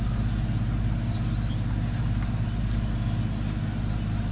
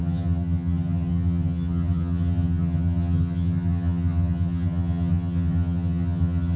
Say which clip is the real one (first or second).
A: first